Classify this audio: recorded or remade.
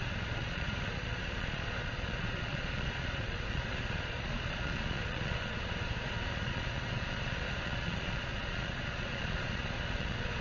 remade